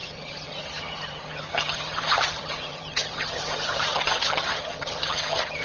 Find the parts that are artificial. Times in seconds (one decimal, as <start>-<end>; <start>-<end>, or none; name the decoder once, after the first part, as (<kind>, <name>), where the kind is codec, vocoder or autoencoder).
0.0-5.6 (vocoder, HiFi-GAN)